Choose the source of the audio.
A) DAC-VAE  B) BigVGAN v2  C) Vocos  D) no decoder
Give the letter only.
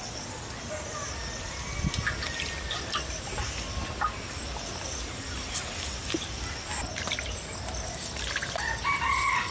D